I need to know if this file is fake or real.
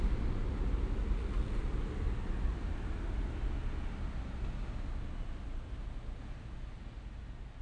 real